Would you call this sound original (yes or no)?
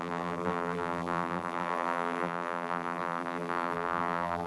no